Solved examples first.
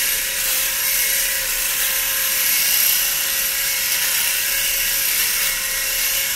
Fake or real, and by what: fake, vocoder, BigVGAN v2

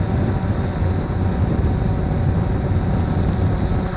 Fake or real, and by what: real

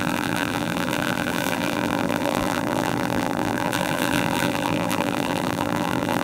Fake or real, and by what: fake, vocoder, BigVGAN v2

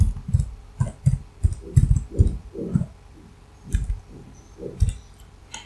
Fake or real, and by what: real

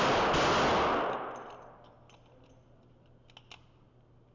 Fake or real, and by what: real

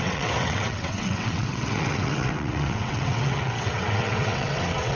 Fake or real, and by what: fake, vocoder, WaveNeXt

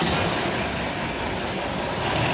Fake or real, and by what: real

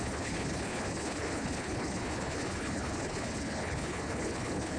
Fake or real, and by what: fake, codec, HILCodec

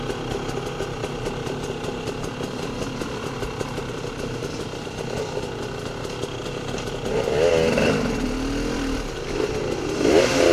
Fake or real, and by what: real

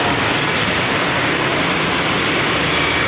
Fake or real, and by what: real